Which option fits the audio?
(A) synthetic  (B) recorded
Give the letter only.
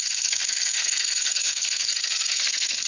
A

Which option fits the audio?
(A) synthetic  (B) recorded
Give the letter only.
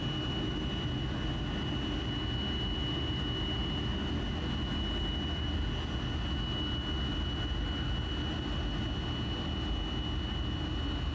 B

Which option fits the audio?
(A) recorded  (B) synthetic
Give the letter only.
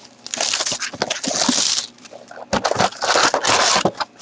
A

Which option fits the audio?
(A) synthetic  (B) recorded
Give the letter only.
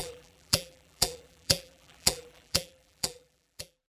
A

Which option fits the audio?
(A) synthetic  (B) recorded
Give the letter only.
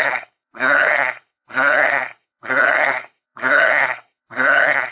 A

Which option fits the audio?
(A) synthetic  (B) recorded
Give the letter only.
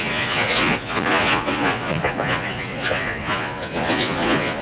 A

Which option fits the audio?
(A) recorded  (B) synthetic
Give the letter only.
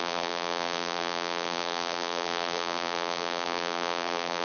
B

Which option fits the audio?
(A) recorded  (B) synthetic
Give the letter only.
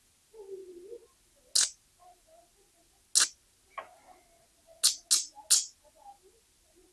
A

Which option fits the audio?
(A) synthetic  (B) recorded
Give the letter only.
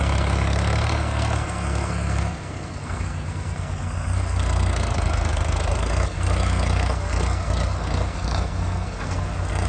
A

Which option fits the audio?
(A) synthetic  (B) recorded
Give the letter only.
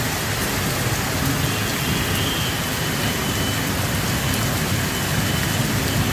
B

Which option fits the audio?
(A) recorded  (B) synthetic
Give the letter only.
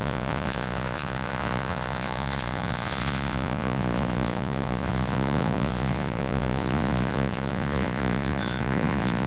B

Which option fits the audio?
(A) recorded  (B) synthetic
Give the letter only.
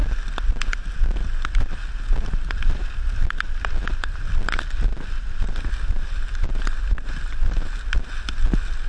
A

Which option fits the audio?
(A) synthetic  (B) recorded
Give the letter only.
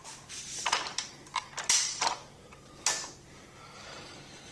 B